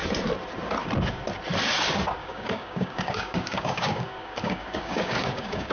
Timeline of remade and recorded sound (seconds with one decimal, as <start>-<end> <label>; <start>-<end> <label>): 0.0-2.2 recorded; 2.2-5.7 remade